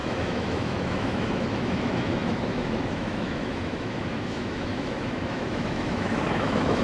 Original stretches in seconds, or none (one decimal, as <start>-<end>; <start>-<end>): none